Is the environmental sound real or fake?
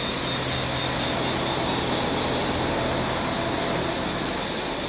real